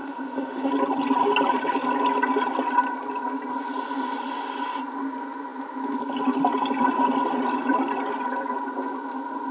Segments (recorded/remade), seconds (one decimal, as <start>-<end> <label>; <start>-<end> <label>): 0.0-0.7 remade; 0.7-9.5 recorded